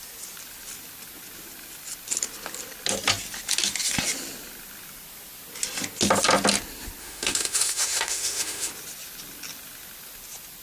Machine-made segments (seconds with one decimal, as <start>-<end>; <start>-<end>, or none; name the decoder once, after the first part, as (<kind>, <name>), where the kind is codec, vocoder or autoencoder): 7.0-8.7 (autoencoder, DAC-VAE)